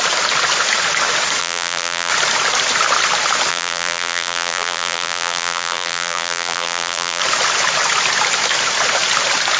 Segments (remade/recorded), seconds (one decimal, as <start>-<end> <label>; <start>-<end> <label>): 0.0-1.4 recorded; 1.4-2.1 remade; 2.1-3.5 recorded; 3.5-7.2 remade; 7.2-9.6 recorded